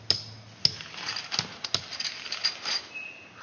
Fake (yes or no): no